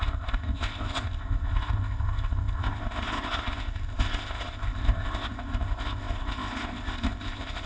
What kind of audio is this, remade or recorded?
remade